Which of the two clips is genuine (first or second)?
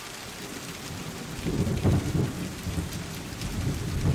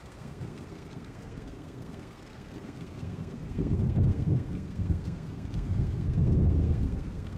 first